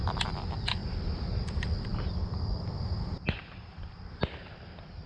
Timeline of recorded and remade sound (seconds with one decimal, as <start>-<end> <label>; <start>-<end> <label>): 0.0-5.1 recorded

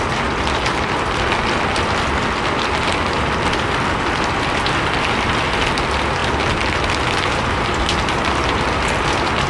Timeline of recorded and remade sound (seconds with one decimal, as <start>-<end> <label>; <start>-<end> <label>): 0.0-9.5 recorded

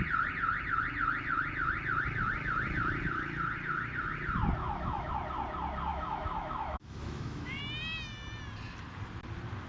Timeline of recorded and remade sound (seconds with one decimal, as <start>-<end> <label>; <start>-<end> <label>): 0.0-4.6 recorded; 4.6-5.1 remade; 5.1-5.9 recorded; 5.9-7.6 remade; 7.6-9.7 recorded

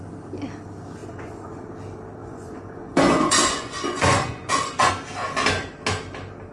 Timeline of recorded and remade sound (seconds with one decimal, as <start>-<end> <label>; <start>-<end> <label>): 0.0-1.0 recorded; 1.0-1.7 remade; 1.7-2.2 recorded; 2.2-4.9 remade; 4.9-6.5 recorded

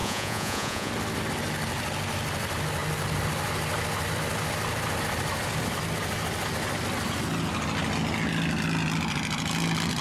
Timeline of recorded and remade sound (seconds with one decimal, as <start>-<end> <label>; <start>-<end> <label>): 0.0-0.9 remade; 0.9-10.0 recorded